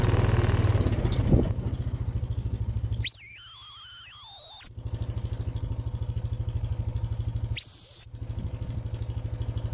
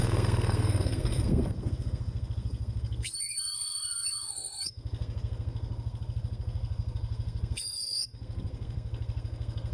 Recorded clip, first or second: first